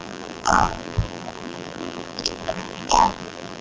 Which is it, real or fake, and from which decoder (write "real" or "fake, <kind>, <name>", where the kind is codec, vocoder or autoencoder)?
fake, vocoder, BigVGAN v2